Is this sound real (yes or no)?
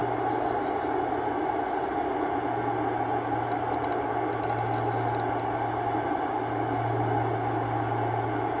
yes